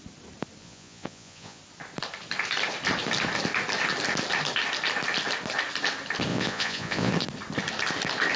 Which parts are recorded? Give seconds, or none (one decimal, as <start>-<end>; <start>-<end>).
0.0-0.6; 1.6-6.3; 7.1-8.4